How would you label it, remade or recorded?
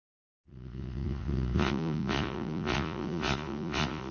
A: remade